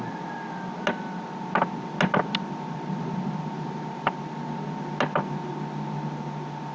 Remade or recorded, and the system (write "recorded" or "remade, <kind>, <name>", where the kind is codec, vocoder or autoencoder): recorded